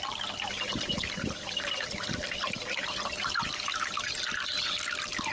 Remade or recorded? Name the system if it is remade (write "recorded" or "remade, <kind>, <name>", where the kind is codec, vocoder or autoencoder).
recorded